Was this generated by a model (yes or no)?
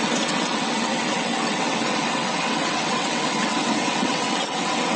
yes